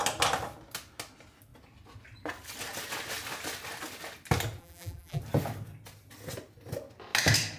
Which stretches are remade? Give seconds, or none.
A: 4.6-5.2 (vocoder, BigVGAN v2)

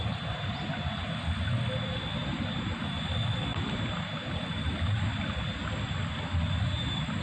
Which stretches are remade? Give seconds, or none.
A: 0.0-0.8 (vocoder, BigVGAN v2); 2.2-3.0; 3.5-4.7

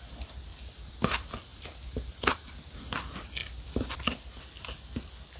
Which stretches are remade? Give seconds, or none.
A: 0.5-1.1 (vocoder, BigVGAN v2); 1.5-2.5

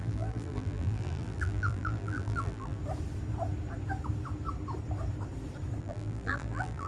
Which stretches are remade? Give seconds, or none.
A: 0.0-2.8 (vocoder, BigVGAN v2); 5.8-6.9

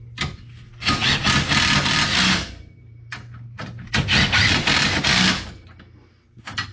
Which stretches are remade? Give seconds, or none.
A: 2.1-4.8 (vocoder, BigVGAN v2)

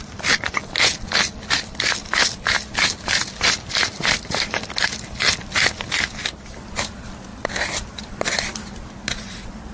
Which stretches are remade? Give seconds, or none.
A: none

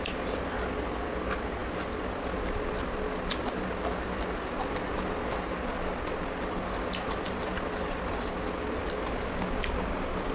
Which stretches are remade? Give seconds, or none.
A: none